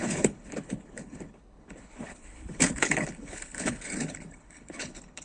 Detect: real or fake fake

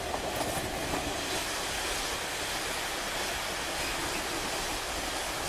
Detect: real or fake real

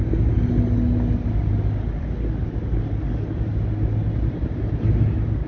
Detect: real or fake real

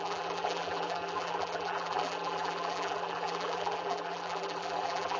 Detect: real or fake fake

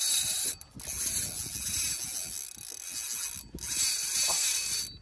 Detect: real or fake real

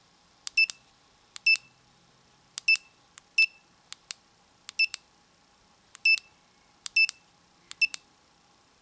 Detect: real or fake real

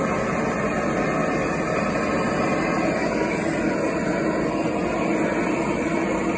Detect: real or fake real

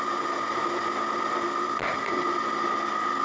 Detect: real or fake real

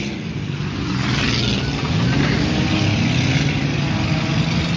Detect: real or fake real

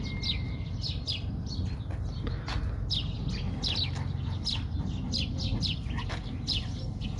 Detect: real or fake real